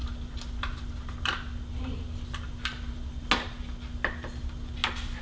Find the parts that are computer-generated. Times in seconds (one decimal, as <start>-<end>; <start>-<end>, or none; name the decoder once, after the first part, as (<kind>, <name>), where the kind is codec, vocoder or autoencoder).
none